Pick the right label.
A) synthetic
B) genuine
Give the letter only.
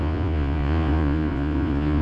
A